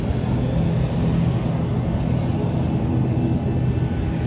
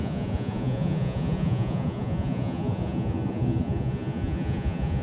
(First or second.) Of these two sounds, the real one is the first